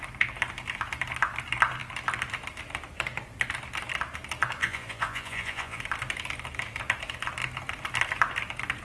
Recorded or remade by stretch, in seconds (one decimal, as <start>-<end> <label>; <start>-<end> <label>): 0.0-4.6 recorded; 4.6-5.8 remade; 5.8-8.8 recorded